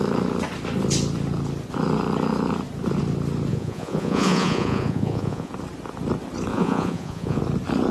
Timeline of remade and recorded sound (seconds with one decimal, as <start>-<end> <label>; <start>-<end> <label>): 0.0-3.5 recorded; 3.5-5.5 remade; 5.5-6.5 recorded; 6.5-7.4 remade; 7.4-7.9 recorded